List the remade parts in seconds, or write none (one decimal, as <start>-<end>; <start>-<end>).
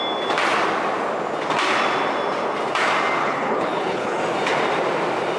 3.2-4.2